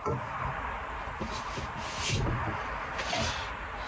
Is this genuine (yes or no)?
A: yes